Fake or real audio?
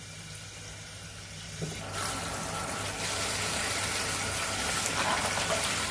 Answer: real